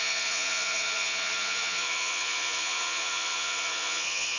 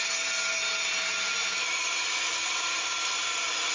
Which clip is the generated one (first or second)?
first